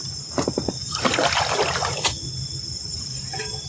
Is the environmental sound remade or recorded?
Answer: recorded